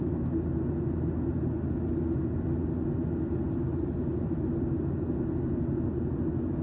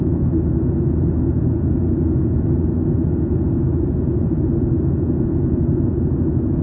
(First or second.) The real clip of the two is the first